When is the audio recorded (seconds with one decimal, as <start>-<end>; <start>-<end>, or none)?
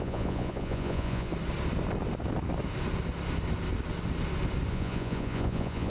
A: 1.3-4.7